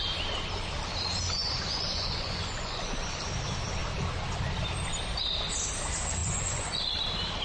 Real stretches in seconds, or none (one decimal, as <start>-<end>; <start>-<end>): 0.0-1.4; 3.1-6.2; 6.8-7.4